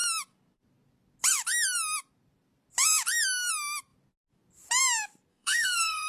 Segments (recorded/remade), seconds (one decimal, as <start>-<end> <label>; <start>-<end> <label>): 0.0-5.3 recorded; 5.3-6.1 remade